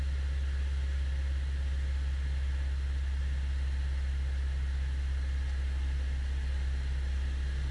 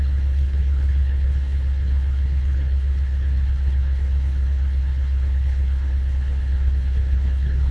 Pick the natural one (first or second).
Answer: first